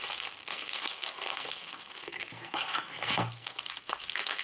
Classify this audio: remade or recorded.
remade